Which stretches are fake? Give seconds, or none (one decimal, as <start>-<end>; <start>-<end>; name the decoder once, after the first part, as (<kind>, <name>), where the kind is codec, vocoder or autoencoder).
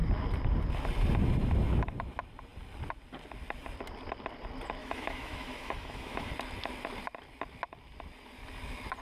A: 4.8-6.3 (autoencoder, DAC-VAE)